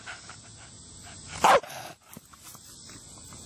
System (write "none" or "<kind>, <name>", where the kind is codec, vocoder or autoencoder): none